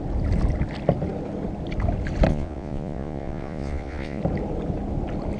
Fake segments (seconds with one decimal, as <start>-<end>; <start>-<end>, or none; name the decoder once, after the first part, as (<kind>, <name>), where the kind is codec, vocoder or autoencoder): 2.3-4.2 (vocoder, Vocos)